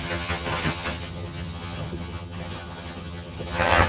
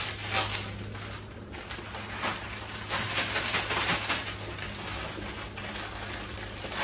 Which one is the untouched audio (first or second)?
second